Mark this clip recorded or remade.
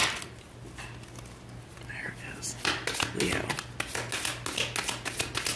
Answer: recorded